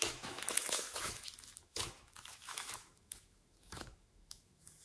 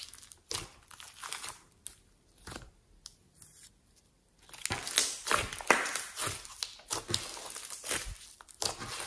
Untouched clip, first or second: second